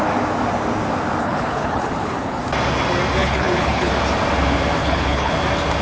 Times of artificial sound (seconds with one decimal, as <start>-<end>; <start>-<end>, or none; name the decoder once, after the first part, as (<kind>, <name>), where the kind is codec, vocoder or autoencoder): 1.2-2.4 (codec, HILCodec); 3.2-3.9; 4.8-5.3